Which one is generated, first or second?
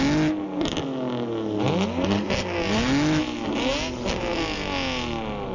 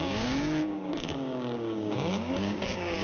second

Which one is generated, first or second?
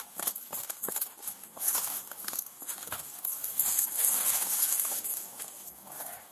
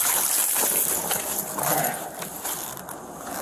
first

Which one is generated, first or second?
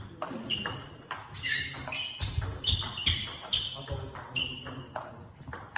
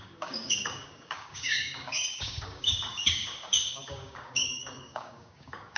second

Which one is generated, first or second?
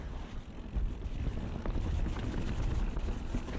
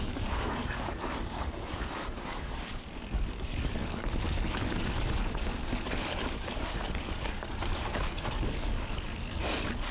second